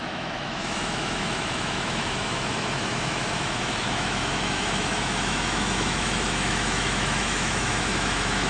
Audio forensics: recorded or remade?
remade